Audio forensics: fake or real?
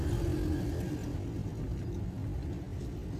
real